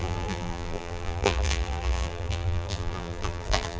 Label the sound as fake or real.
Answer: fake